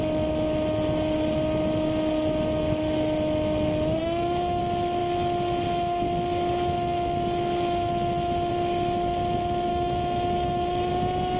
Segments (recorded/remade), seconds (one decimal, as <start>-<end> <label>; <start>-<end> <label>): 0.0-4.0 recorded; 4.0-4.6 remade; 4.6-9.7 recorded; 9.7-10.9 remade; 10.9-11.4 recorded